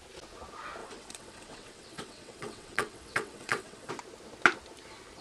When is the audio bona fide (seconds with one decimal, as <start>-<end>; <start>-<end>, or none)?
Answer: 0.0-0.8; 3.9-5.2